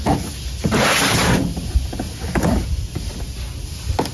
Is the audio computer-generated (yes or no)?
no